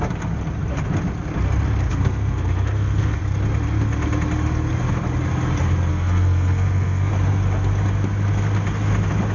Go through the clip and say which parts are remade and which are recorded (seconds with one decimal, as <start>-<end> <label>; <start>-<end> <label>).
0.0-1.9 recorded; 1.9-3.2 remade; 3.2-5.9 recorded; 5.9-7.1 remade; 7.1-9.3 recorded